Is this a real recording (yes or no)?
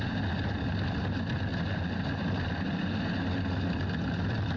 yes